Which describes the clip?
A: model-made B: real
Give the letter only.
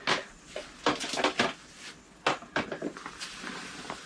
B